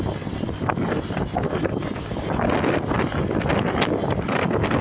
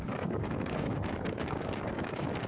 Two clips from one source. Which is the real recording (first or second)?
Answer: first